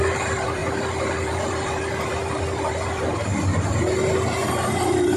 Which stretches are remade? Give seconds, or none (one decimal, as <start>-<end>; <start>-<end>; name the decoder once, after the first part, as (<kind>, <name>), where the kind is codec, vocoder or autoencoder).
0.0-3.3 (vocoder, BigVGAN v2); 4.5-5.2

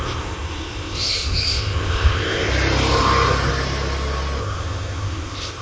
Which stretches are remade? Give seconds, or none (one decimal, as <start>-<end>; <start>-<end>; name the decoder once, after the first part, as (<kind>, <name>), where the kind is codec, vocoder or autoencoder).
0.0-2.5 (codec, ZipCodec); 4.4-5.6

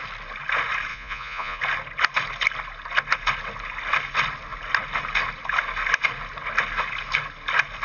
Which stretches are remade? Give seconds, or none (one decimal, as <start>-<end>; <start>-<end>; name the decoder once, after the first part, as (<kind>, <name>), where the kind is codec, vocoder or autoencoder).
0.9-1.6 (vocoder, Vocos)

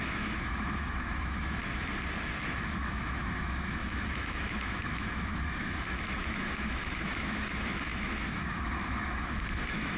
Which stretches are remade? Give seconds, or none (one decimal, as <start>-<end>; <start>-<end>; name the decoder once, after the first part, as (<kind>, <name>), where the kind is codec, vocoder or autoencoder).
0.0-1.6 (autoencoder, DAC-VAE); 2.7-10.0

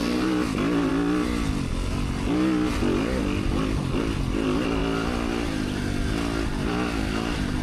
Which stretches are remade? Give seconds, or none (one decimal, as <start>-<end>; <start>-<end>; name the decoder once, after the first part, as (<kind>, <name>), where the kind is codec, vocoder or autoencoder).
none

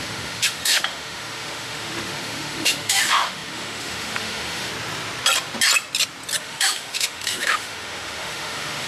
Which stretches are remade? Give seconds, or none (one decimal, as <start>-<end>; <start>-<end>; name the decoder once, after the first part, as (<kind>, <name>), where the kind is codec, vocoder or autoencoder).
0.0-4.7 (autoencoder, DAC-VAE); 6.4-8.9